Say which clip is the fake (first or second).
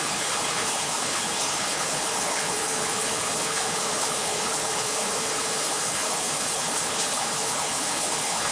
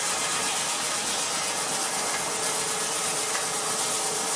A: first